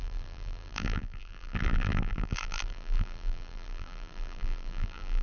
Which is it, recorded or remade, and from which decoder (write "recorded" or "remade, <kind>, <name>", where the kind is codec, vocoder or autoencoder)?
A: remade, vocoder, BigVGAN v2